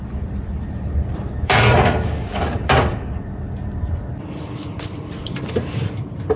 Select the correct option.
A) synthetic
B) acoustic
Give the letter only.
A